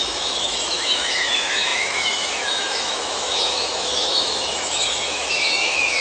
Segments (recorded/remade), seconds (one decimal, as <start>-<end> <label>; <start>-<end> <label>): 0.0-6.0 remade